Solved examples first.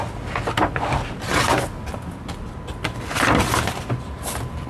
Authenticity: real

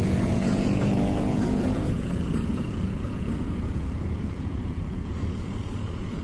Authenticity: fake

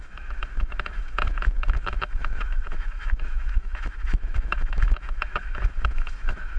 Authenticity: fake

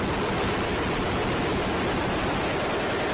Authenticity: real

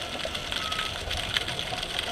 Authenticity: real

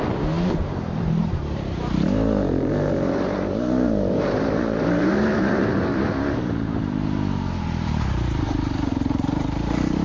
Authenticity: fake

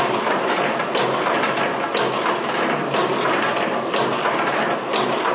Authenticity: real